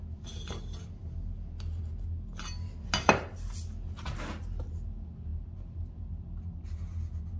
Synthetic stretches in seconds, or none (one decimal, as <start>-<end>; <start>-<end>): none

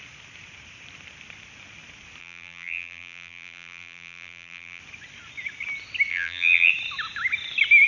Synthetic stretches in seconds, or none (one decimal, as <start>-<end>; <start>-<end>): 2.2-4.8; 6.1-6.7

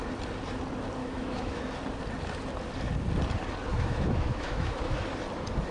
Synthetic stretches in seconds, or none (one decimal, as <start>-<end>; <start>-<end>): 1.0-1.6; 3.7-5.0

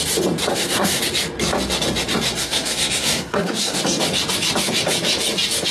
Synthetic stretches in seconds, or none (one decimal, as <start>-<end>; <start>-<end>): 0.5-1.0; 2.4-3.8

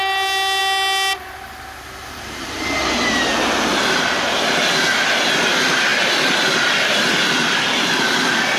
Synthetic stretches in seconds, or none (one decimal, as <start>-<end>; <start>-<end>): none

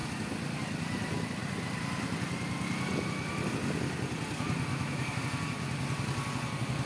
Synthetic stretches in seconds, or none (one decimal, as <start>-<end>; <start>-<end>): 4.7-5.2

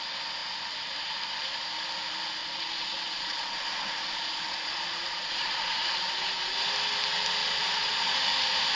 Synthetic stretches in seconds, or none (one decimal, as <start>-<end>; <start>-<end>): 2.4-6.7; 7.4-8.0

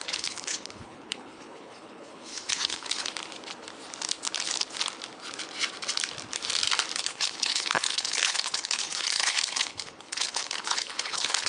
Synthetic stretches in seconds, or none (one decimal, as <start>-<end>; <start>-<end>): 0.0-3.1; 7.0-11.5